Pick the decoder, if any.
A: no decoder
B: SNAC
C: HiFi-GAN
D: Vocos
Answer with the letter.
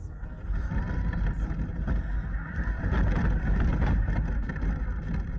A